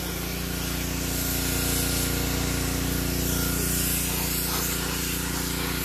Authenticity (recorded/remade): recorded